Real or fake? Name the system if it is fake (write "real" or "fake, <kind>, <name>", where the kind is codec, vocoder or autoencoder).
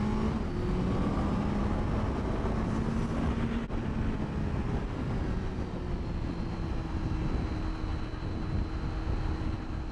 real